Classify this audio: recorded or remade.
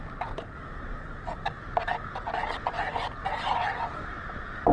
recorded